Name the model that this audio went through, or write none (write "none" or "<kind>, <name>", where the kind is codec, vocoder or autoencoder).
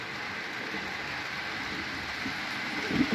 none